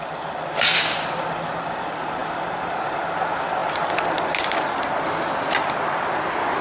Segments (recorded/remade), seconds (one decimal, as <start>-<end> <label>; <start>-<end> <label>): 0.0-6.6 recorded